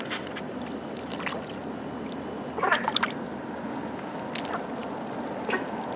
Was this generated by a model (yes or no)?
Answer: no